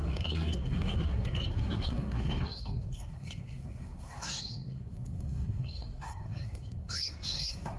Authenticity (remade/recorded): remade